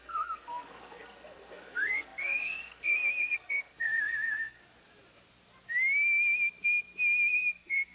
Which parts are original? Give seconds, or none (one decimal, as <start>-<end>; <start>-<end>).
4.6-7.3